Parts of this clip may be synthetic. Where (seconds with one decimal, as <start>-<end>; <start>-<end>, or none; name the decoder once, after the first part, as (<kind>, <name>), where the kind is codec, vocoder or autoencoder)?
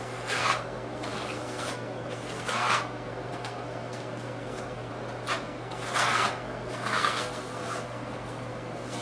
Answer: 0.0-4.9 (codec, SNAC); 5.4-9.0